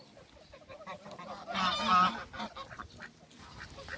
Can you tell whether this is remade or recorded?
recorded